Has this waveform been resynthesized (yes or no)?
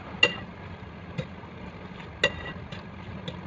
no